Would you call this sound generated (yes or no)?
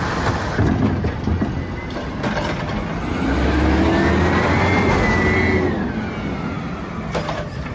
no